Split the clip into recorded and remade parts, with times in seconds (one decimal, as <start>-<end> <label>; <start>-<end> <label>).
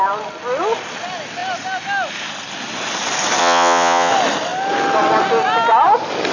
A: 0.0-3.4 recorded; 3.4-4.1 remade; 4.1-6.3 recorded